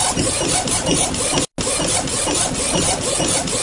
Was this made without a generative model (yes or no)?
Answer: yes